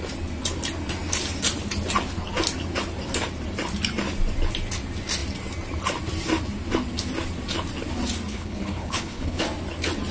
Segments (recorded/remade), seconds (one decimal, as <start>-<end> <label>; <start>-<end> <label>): 0.0-8.3 recorded; 8.3-9.4 remade; 9.4-10.1 recorded